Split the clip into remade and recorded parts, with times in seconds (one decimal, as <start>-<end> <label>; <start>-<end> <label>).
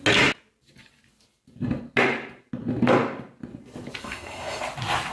0.0-4.0 recorded; 4.0-4.6 remade; 4.6-5.1 recorded